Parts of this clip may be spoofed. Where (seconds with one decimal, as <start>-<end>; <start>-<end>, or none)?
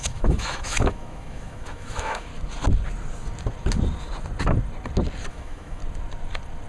0.0-2.3; 5.3-5.8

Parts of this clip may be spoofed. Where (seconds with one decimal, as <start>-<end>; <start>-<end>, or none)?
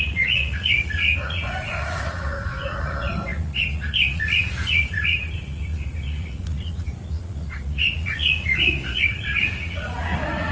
0.0-10.5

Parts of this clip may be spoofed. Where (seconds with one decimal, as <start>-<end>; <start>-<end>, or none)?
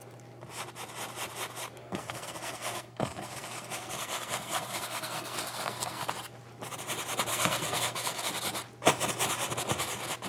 1.8-6.1; 7.3-8.3